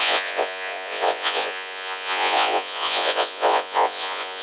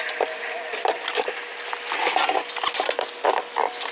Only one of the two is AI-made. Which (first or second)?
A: first